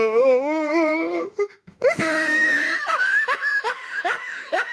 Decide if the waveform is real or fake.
fake